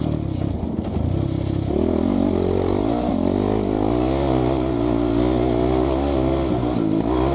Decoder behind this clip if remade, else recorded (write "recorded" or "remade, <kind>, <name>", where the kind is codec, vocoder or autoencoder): recorded